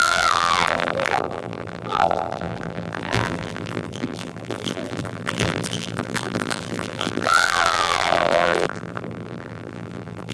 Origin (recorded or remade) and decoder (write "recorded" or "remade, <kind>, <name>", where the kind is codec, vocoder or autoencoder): remade, vocoder, BigVGAN v2